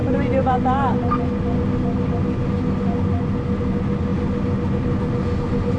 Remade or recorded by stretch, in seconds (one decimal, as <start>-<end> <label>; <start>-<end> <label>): 0.0-5.8 recorded